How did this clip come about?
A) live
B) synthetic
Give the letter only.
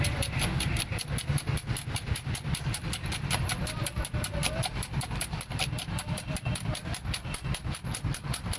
A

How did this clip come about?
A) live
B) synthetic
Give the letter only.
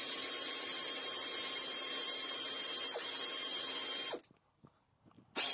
A